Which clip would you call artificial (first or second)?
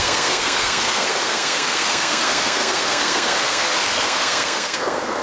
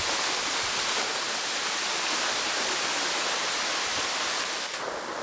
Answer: first